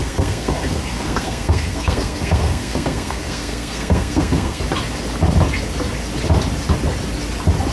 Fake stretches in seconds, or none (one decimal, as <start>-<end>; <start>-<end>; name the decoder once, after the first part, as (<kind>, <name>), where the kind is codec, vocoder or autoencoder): 0.0-4.6 (codec, SNAC)